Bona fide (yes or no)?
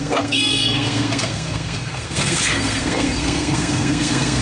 no